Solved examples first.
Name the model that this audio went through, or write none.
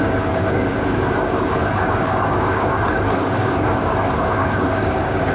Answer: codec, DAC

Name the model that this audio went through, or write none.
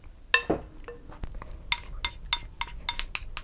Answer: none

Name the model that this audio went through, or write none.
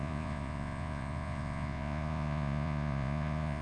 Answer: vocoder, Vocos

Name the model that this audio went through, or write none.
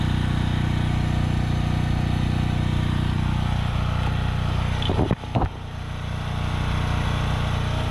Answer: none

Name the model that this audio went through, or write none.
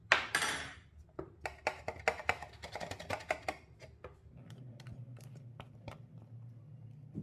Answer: none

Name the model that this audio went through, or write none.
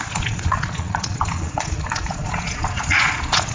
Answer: vocoder, Vocos